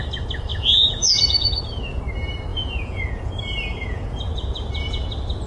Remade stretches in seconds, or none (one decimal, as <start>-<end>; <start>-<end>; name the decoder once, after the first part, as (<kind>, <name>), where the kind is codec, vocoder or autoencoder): 0.5-2.0 (vocoder, Vocos); 2.5-3.3; 3.7-4.2